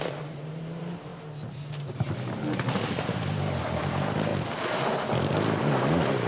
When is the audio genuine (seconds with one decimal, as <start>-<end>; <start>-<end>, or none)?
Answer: 1.1-3.9; 4.3-5.6